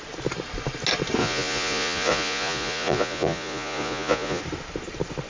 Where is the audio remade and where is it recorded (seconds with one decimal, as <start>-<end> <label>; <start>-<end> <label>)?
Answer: 0.0-1.2 recorded; 1.2-4.4 remade; 4.4-5.3 recorded